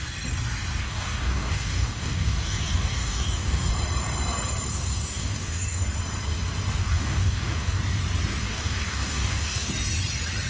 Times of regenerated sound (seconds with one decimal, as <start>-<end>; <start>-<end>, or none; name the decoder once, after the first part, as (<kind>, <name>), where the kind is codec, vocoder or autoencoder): 0.8-3.7 (codec, DAC); 4.7-5.8; 6.8-7.8; 8.4-9.7